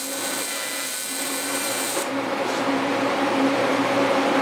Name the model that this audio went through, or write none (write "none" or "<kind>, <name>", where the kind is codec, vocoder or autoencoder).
vocoder, BigVGAN v2